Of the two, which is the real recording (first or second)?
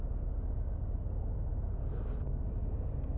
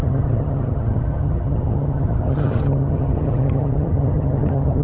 first